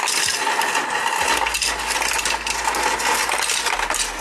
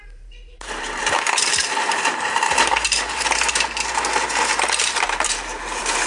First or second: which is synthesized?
second